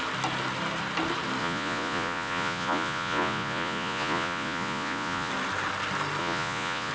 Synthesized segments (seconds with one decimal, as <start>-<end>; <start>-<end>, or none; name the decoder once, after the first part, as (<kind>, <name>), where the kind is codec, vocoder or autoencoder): 1.4-5.3 (vocoder, Vocos); 6.2-6.9